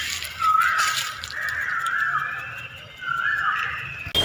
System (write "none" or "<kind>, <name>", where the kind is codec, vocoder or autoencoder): none